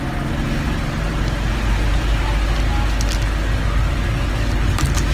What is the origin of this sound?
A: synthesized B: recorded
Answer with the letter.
B